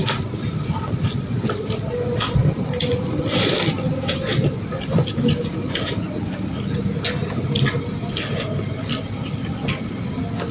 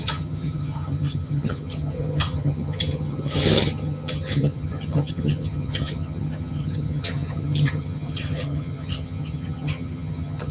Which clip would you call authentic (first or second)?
first